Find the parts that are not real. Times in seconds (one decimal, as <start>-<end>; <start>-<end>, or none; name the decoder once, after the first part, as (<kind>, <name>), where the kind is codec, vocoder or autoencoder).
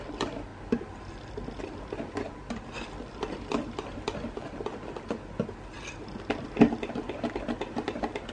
none